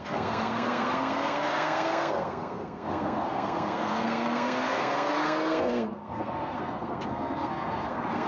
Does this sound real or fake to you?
fake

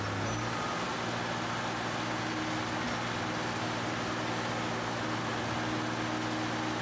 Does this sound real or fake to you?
real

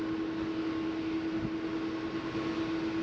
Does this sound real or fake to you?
real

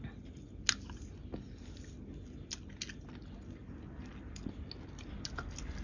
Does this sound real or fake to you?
real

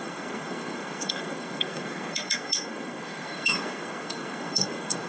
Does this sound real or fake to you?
fake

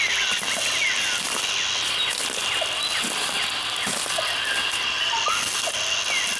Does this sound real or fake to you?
real